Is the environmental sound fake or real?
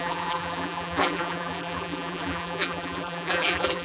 fake